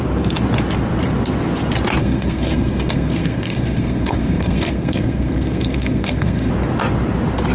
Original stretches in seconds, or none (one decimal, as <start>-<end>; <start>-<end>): 0.0-2.0; 6.5-7.5